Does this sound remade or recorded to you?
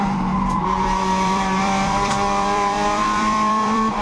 remade